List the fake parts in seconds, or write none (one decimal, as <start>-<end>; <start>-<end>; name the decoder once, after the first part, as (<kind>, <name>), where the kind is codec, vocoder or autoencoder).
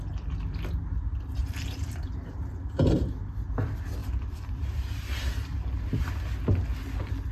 1.4-3.0 (vocoder, BigVGAN v2); 4.0-6.0